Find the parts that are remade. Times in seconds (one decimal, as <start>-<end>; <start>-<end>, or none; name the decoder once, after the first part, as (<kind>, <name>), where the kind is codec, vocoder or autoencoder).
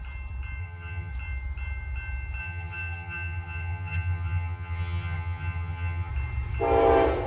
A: 0.6-1.1 (vocoder, HiFi-GAN); 2.4-6.1